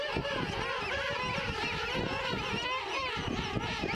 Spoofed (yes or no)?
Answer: no